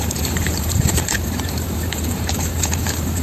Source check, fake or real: fake